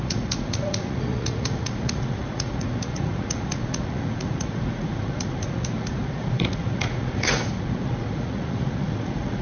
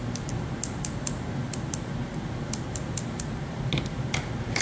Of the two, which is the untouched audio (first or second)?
second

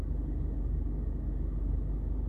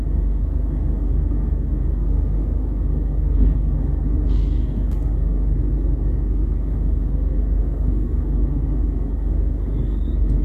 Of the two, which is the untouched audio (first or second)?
first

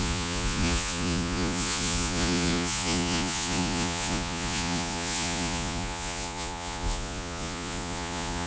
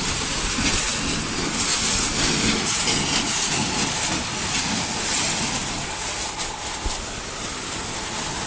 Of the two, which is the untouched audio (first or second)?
second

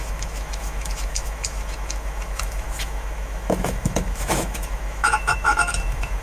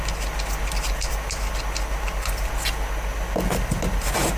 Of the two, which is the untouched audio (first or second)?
second